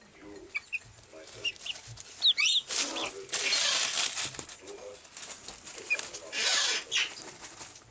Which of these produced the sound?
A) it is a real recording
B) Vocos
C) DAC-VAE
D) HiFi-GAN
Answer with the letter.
A